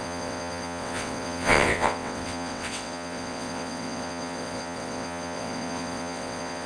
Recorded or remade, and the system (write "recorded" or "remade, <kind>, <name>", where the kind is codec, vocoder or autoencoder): remade, vocoder, WaveNeXt